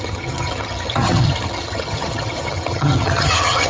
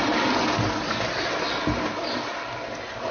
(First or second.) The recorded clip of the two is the second